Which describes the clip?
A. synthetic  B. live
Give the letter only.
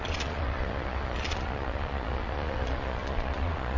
A